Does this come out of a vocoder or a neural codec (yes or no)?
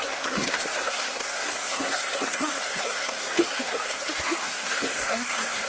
yes